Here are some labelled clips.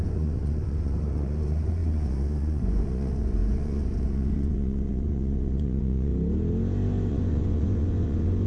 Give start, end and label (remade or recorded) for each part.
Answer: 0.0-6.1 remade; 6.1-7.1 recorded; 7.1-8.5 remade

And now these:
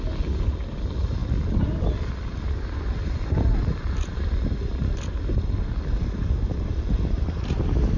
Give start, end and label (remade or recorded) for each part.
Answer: 0.0-8.0 recorded

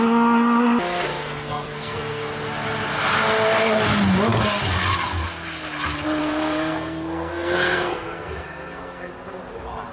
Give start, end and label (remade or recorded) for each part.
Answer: 0.0-1.1 recorded; 1.1-2.3 remade; 2.3-6.2 recorded; 6.2-9.4 remade; 9.4-9.9 recorded

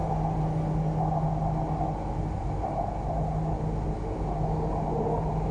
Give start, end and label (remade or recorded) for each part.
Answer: 0.0-5.5 recorded

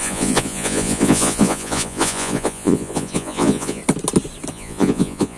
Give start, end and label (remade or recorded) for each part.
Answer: 0.0-3.8 remade; 3.8-4.5 recorded; 4.5-5.4 remade

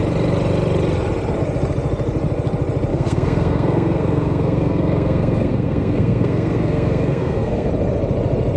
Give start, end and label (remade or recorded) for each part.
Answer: 0.0-2.9 recorded; 2.9-7.7 remade; 7.7-8.6 recorded